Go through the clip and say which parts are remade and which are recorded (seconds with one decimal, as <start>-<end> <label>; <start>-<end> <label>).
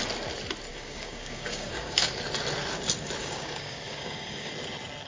0.0-0.7 recorded; 0.7-2.1 remade; 2.1-3.2 recorded; 3.2-4.5 remade; 4.5-5.1 recorded